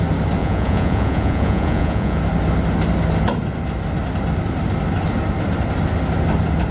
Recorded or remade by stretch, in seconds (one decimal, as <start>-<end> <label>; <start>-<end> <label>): 0.0-0.4 recorded; 0.4-2.2 remade; 2.2-6.7 recorded